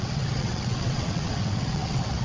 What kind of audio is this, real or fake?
fake